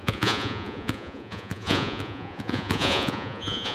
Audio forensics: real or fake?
fake